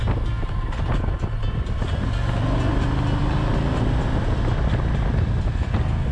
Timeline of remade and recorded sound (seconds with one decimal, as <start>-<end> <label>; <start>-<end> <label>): 0.0-6.1 recorded

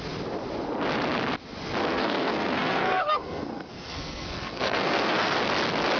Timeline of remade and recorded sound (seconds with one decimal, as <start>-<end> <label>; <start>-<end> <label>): 0.0-1.8 recorded; 1.8-5.4 remade; 5.4-6.0 recorded

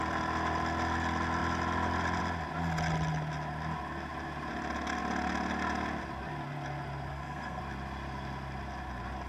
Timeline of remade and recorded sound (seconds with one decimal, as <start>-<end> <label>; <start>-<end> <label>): 0.0-7.1 recorded; 7.1-7.6 remade; 7.6-9.3 recorded

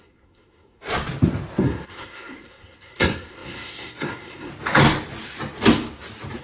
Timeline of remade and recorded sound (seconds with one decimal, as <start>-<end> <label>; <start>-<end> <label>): 0.0-0.8 remade; 0.8-1.6 recorded; 1.6-4.5 remade; 4.5-6.4 recorded